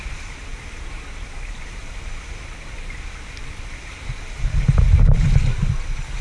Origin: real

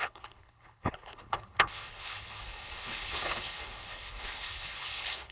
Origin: fake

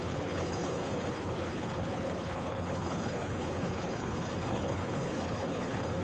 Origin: fake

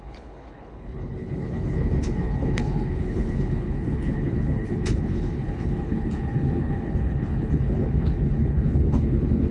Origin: fake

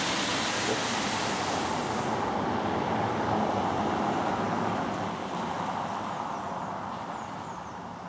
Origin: real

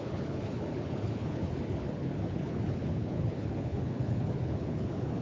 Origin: fake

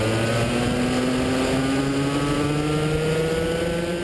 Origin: real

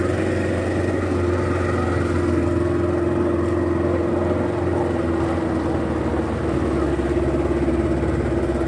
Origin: real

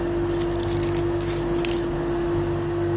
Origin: real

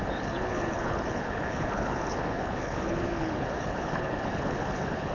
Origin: fake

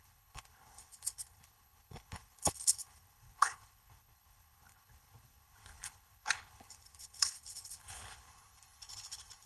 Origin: fake